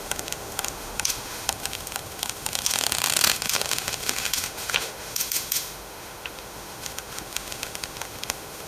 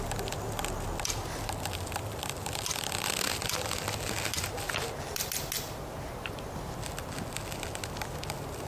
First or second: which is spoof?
first